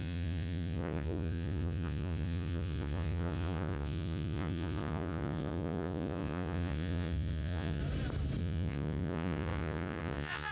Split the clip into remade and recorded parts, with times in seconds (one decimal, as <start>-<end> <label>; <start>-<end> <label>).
0.0-7.8 remade; 7.8-8.4 recorded; 8.4-10.5 remade